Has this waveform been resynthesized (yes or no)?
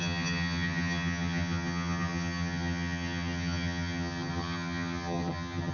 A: yes